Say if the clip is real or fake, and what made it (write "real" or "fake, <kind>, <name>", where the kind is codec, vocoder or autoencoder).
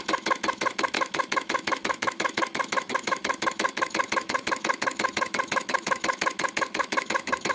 fake, autoencoder, DAC-VAE